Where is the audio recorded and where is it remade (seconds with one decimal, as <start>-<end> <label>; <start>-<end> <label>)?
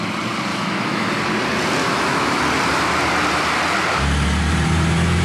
0.0-0.5 recorded; 0.5-1.1 remade; 1.1-1.8 recorded; 1.8-2.4 remade; 2.4-5.2 recorded